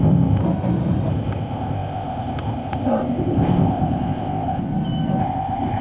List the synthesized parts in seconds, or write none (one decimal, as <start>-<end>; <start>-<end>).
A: 0.0-0.4; 1.1-4.6; 5.2-5.8